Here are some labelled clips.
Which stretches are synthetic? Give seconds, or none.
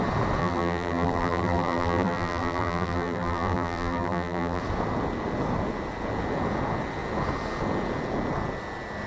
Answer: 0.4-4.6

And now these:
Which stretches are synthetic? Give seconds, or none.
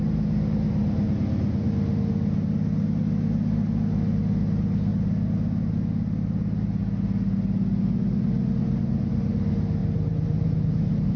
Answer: 9.8-11.2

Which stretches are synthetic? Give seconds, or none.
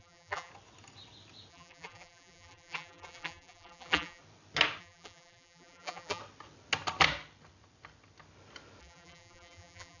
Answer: 0.0-0.5; 1.5-4.2; 4.8-6.2; 8.8-10.0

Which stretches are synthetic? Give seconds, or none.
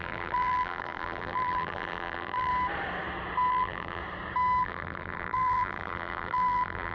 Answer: 0.0-2.5; 3.5-4.0; 4.6-6.9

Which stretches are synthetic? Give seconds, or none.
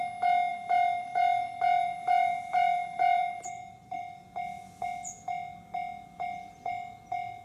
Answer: 0.5-4.0